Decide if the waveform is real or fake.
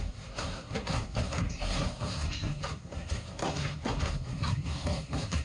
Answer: fake